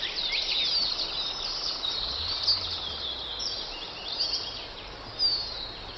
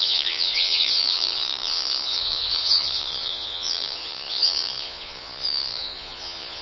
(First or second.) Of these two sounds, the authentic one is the first